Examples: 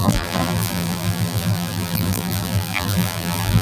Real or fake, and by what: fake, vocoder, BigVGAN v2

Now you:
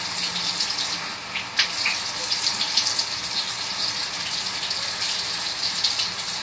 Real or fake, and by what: fake, vocoder, BigVGAN v2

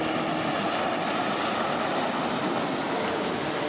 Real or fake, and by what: real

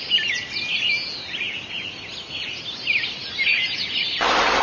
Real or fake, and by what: real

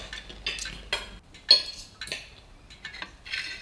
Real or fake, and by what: real